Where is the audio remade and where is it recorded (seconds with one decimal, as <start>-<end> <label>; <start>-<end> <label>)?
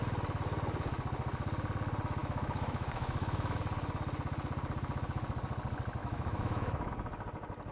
0.0-2.2 recorded; 2.2-3.6 remade; 3.6-6.0 recorded; 6.0-6.9 remade; 6.9-7.7 recorded